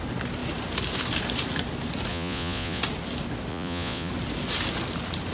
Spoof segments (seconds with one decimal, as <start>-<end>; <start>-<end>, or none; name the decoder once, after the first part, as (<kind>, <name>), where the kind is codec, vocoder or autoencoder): 2.1-2.8 (vocoder, Vocos); 3.5-4.1